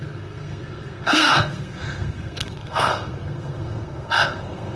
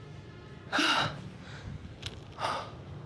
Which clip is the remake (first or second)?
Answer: first